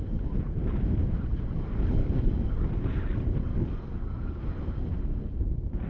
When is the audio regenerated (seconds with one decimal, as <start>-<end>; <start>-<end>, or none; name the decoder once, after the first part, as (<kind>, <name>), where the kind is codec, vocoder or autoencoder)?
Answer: 2.0-2.7 (codec, DAC); 3.5-4.4